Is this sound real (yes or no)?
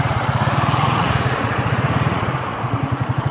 no